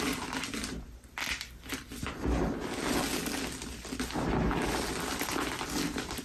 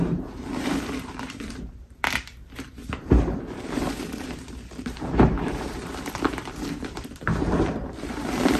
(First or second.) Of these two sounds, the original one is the first